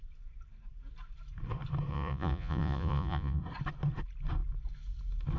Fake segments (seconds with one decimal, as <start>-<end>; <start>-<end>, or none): 1.9-3.4